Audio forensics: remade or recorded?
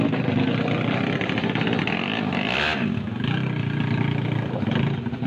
recorded